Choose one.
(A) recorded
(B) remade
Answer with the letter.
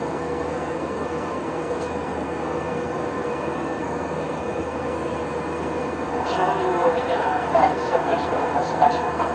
B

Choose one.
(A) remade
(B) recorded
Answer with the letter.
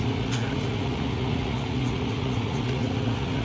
A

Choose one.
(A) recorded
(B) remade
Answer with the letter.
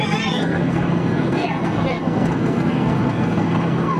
B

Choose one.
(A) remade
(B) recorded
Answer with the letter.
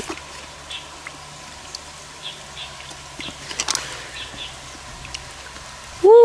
B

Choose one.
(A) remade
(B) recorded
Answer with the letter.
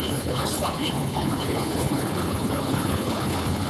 A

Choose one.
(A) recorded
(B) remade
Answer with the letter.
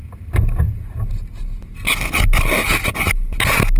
A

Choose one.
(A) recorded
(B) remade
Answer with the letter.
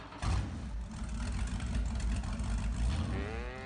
A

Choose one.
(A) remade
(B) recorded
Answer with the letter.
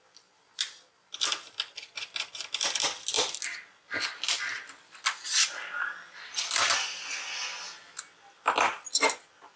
B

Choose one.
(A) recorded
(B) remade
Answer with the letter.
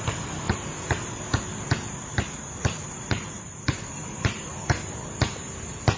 B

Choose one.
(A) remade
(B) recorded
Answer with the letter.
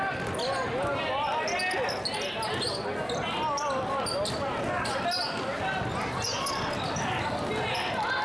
B